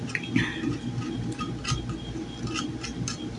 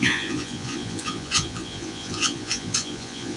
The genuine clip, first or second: first